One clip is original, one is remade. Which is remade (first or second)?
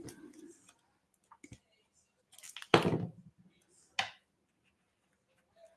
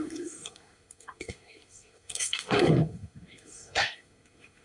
second